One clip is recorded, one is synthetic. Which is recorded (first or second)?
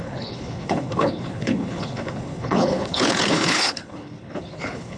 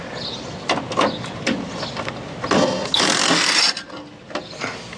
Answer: second